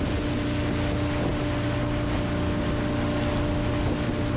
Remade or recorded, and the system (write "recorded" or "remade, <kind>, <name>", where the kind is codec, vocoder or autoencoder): recorded